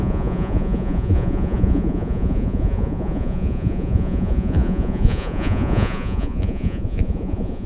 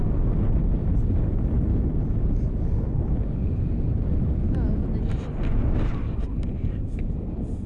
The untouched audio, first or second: second